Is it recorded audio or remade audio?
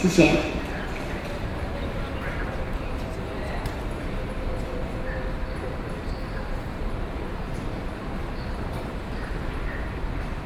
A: remade